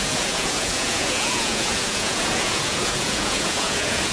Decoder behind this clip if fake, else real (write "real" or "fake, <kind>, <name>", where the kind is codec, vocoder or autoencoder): fake, vocoder, Vocos